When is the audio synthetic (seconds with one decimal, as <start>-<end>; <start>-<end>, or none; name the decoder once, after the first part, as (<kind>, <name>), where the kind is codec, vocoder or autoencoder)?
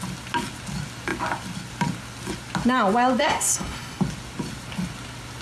3.2-4.0 (codec, SNAC)